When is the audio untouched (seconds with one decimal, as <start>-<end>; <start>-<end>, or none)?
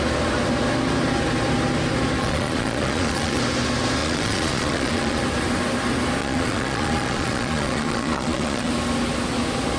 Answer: 0.0-2.2; 3.4-4.0; 5.2-6.2; 8.7-9.8